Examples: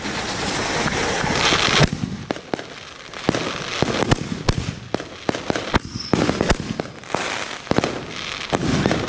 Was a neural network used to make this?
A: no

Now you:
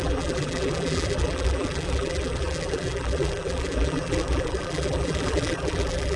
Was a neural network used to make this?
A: yes